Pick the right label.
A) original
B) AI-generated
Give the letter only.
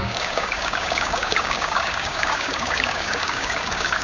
B